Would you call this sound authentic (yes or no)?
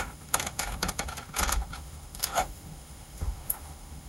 no